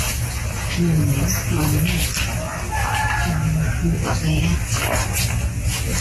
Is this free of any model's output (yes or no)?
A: yes